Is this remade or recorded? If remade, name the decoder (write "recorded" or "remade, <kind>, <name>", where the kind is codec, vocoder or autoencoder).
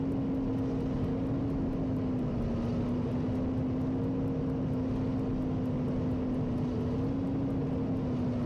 recorded